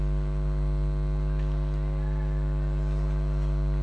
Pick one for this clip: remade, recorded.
recorded